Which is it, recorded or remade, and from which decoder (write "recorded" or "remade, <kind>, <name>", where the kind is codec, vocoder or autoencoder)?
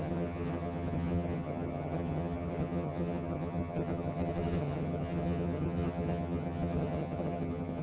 remade, vocoder, HiFi-GAN